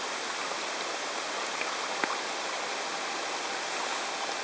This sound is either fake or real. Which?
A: real